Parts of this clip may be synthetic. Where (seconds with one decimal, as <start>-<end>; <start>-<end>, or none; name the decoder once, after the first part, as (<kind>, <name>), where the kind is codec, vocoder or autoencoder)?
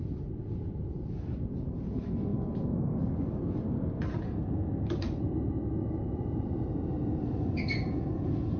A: none